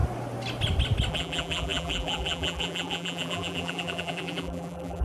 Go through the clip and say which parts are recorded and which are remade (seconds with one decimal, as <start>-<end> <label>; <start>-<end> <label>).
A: 0.0-1.1 recorded; 1.1-5.0 remade

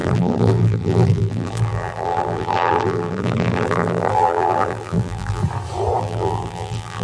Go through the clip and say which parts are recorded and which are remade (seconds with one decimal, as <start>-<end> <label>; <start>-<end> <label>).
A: 0.0-5.4 remade; 5.4-6.0 recorded; 6.0-7.0 remade

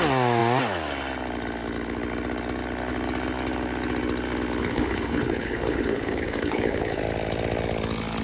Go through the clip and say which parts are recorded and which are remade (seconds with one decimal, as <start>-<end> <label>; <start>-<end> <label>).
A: 0.0-4.6 recorded; 4.6-7.0 remade; 7.0-8.2 recorded

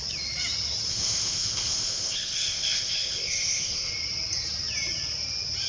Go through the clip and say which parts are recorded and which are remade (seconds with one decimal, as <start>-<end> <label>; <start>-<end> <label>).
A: 0.0-0.9 recorded; 0.9-3.9 remade; 3.9-5.7 recorded